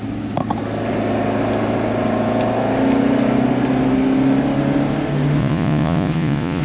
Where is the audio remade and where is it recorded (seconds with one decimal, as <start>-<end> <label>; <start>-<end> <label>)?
0.0-5.4 recorded; 5.4-6.6 remade

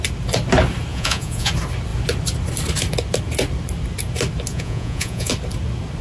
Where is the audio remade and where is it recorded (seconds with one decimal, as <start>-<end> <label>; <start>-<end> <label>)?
0.0-0.9 recorded; 0.9-1.5 remade; 1.5-4.5 recorded; 4.5-5.3 remade; 5.3-6.0 recorded